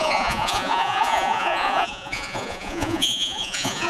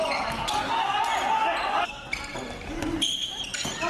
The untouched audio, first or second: second